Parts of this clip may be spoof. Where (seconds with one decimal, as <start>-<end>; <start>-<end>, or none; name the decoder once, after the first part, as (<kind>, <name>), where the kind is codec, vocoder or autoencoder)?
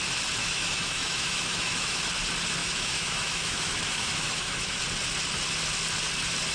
0.4-2.0 (autoencoder, DAC-VAE); 2.6-4.8